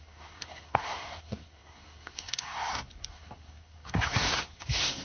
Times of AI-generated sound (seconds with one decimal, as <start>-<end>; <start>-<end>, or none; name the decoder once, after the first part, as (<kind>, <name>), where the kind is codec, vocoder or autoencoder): 0.0-5.0 (codec, SNAC)